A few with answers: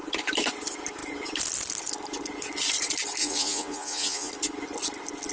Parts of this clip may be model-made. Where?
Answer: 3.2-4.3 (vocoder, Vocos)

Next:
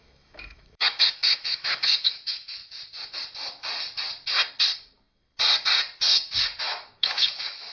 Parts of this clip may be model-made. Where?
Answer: 0.0-2.6 (autoencoder, DAC-VAE); 6.6-7.7

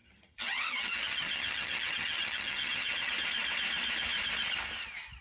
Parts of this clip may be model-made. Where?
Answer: 0.0-3.1 (vocoder, HiFi-GAN)

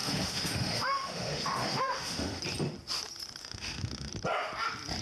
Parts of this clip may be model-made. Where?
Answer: 0.0-2.4 (autoencoder, DAC-VAE); 3.4-4.1

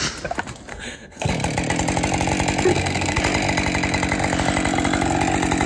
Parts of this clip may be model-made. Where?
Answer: 0.7-1.3 (codec, SNAC); 2.7-3.2

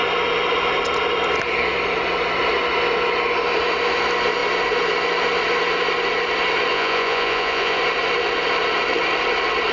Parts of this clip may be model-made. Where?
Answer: 6.7-7.8 (vocoder, Vocos)

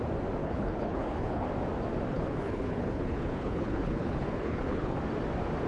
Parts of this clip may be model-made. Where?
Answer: 0.4-1.5 (codec, HILCodec); 2.1-5.0

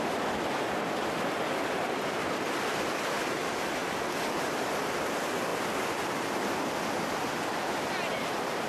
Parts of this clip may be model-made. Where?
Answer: none